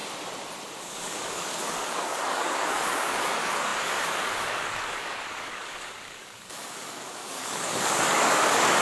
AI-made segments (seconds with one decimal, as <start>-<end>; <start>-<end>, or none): 0.8-8.8